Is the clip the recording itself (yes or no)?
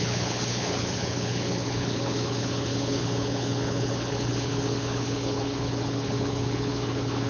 no